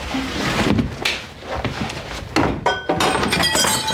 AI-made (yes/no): no